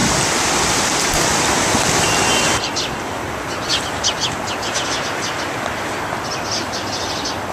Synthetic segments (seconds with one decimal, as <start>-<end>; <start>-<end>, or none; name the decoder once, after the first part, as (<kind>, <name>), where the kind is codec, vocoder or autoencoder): 0.0-3.2 (vocoder, BigVGAN v2)